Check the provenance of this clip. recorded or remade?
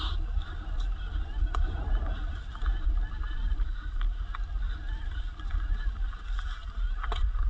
recorded